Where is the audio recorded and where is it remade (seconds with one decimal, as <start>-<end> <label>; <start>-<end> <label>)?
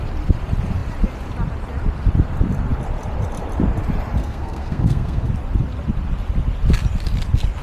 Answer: 0.0-4.2 recorded; 4.2-5.3 remade; 5.3-7.6 recorded